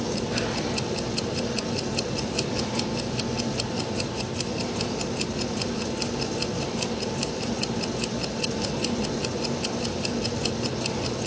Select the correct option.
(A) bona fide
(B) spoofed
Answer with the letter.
A